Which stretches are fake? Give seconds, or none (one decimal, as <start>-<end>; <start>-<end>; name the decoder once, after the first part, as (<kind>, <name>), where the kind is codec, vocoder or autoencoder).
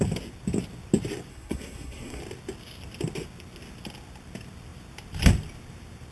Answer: 1.3-2.2 (codec, SNAC)